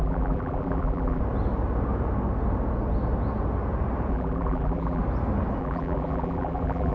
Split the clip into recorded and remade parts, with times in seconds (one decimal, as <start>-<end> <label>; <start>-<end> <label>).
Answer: 0.0-1.2 remade; 1.2-4.1 recorded; 4.1-5.0 remade; 5.0-5.6 recorded; 5.6-6.9 remade